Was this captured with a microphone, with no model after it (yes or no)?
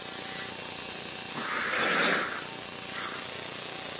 yes